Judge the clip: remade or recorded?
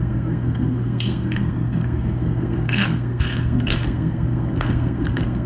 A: remade